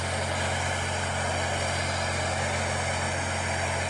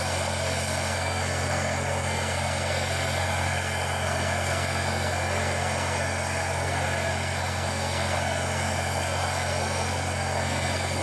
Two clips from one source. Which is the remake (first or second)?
second